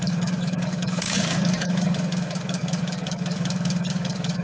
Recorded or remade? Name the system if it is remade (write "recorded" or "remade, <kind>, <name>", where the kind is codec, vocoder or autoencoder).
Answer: remade, codec, DAC